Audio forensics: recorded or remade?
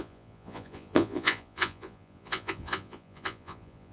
remade